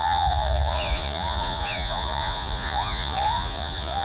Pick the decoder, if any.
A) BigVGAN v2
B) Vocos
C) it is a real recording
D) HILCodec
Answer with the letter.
B